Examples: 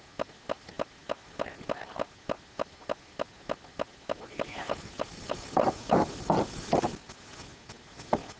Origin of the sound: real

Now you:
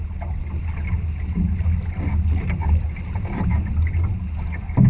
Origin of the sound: real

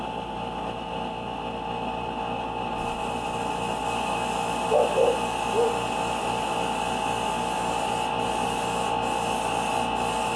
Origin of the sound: real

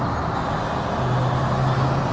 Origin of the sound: real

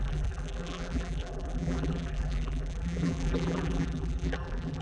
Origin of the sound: fake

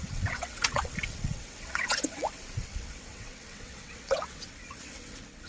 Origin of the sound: fake